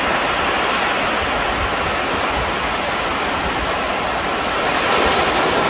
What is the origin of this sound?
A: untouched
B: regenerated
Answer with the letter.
A